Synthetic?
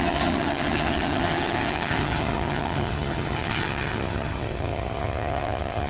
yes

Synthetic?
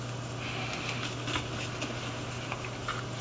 no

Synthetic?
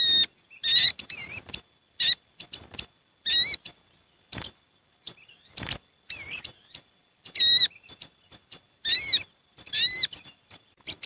no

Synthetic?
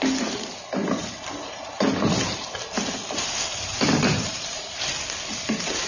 no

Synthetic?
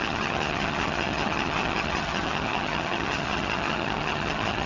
yes